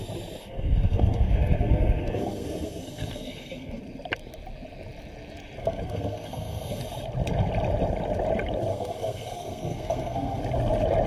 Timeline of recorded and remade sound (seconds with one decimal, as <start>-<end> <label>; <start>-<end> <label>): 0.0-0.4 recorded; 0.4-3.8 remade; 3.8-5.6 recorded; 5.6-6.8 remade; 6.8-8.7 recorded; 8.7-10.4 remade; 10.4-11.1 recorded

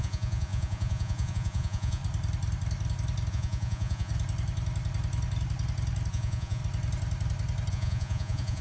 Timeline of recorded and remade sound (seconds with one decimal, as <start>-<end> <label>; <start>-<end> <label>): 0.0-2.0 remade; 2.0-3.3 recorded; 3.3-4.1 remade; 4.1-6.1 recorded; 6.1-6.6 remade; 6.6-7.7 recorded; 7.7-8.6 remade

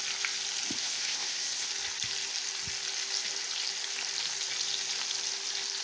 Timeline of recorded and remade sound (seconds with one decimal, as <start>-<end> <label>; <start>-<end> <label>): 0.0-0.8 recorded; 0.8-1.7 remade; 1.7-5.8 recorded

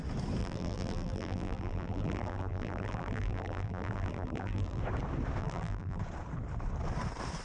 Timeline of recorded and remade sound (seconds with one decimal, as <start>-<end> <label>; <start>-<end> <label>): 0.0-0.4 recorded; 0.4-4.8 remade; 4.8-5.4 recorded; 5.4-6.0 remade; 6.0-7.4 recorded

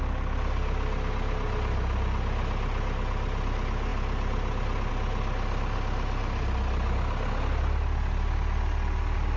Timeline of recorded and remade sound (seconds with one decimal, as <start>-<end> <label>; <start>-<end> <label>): 0.0-9.4 recorded